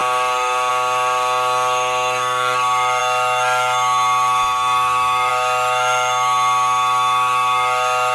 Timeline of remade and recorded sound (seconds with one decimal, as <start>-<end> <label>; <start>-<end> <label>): 0.0-8.1 remade